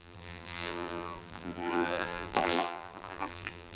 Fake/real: fake